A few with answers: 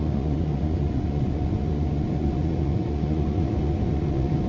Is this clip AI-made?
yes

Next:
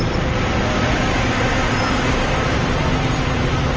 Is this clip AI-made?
no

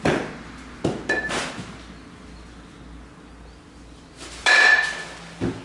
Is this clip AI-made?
no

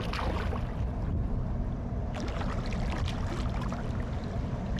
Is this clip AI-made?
no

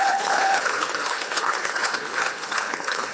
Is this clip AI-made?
yes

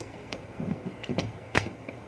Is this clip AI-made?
yes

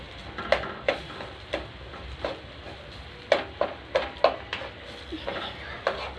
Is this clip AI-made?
no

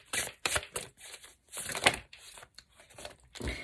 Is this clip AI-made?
yes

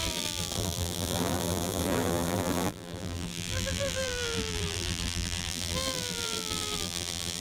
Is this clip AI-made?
yes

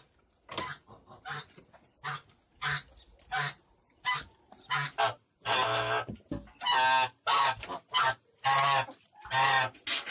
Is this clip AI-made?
no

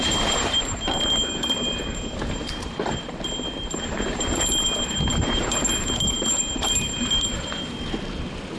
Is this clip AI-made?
yes